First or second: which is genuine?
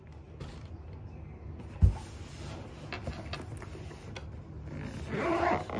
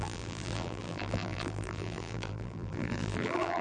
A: first